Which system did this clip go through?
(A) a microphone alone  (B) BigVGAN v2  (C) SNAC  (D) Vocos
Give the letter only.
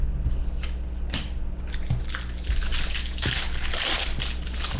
A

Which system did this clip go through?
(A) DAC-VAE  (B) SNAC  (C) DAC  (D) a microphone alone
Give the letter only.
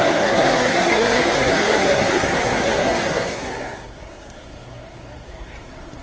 B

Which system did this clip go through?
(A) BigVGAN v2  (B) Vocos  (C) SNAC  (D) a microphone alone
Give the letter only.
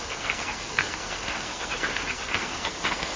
C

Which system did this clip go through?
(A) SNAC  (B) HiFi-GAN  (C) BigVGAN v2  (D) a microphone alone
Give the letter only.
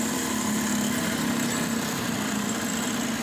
D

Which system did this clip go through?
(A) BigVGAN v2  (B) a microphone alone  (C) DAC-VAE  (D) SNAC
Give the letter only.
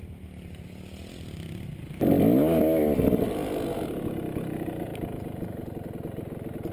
B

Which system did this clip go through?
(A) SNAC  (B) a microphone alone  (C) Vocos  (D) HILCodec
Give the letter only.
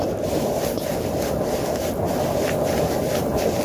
B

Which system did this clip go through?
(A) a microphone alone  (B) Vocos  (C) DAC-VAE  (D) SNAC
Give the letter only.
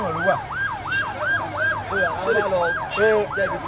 A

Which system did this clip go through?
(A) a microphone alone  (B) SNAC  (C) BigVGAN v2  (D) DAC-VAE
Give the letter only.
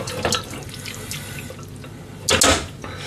A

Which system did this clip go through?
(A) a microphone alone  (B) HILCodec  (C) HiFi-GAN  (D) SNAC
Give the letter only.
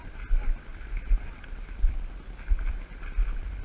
A